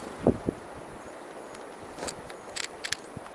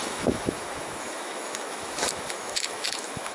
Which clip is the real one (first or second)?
first